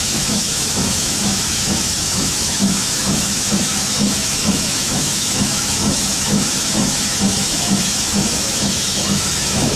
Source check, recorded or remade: remade